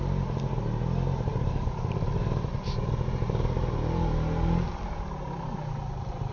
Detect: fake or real real